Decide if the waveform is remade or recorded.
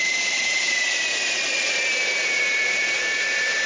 remade